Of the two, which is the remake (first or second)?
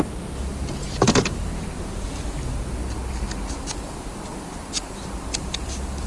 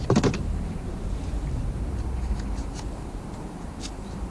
second